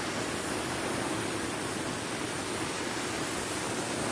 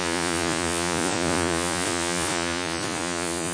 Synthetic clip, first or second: second